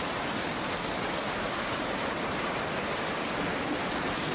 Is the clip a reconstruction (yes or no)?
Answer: no